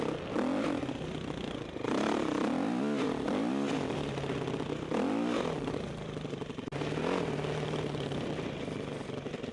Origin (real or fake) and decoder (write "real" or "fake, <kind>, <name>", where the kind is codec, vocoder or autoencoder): real